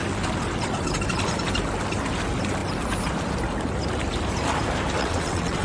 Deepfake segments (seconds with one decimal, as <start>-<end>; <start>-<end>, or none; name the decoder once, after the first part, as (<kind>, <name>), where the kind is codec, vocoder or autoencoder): 5.0-5.6 (vocoder, WaveNeXt)

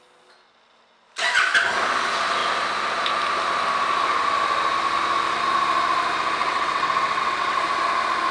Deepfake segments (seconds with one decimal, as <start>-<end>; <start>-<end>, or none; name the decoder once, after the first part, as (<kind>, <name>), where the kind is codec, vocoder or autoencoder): 6.4-7.6 (vocoder, WaveNeXt)